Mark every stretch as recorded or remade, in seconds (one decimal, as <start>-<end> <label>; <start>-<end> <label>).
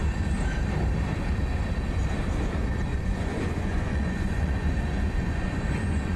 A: 0.0-2.9 recorded; 2.9-6.2 remade